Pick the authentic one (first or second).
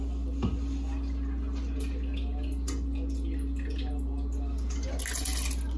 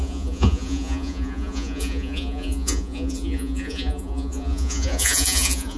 first